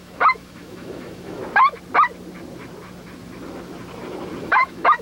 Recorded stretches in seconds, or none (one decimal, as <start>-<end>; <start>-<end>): 1.4-4.4